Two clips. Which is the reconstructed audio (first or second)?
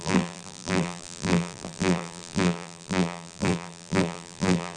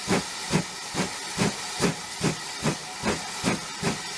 first